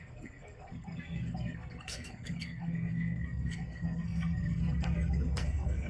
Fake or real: fake